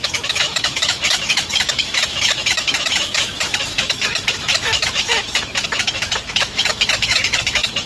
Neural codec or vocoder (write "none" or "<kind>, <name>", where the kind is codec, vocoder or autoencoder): autoencoder, DAC-VAE